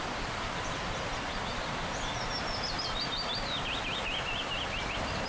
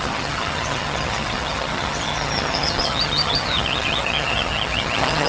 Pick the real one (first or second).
first